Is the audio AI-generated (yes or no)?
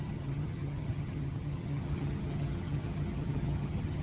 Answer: yes